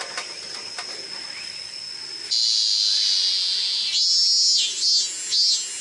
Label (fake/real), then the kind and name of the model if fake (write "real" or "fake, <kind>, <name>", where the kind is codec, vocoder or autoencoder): real